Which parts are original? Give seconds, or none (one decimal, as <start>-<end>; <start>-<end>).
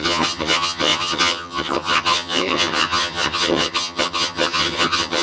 none